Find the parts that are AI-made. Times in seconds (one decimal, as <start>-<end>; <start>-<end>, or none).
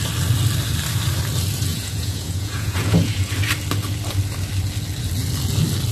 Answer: 1.7-3.3